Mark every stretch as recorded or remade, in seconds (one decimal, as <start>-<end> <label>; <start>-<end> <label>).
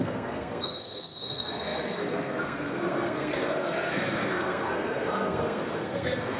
0.0-6.4 remade